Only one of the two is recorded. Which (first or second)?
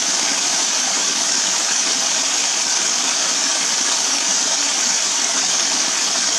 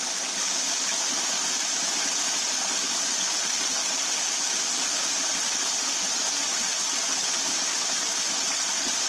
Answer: second